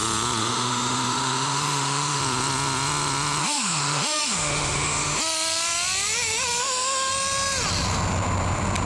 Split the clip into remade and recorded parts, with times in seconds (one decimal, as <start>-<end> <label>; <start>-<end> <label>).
0.0-0.4 recorded; 0.4-2.2 remade; 2.2-3.4 recorded; 3.4-5.2 remade; 5.2-6.6 recorded; 6.6-7.1 remade; 7.1-8.9 recorded